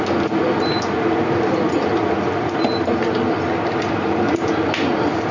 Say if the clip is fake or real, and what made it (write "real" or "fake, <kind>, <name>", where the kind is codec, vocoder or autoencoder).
fake, vocoder, BigVGAN v2